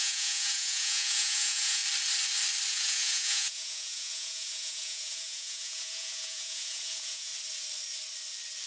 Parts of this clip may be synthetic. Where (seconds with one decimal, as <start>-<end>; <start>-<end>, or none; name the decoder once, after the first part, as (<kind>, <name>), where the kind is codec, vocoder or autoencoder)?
0.0-1.8 (vocoder, Vocos); 2.7-7.3